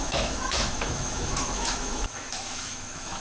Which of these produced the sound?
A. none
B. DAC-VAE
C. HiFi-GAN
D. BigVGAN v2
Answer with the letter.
B